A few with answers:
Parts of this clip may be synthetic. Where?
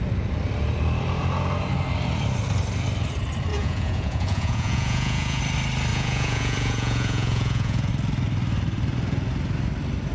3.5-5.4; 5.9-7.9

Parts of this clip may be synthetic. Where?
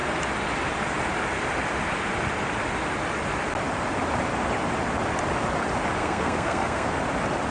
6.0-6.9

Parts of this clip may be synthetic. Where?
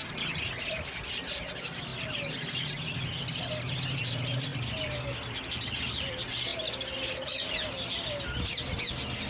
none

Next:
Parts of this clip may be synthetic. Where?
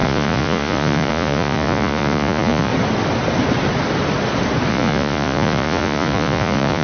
0.0-2.7; 4.7-6.8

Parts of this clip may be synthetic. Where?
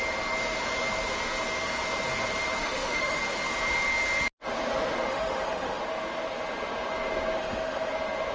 2.6-3.2; 5.1-5.8; 7.4-7.9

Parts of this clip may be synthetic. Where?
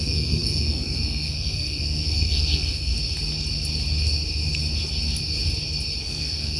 0.0-2.9; 6.0-6.6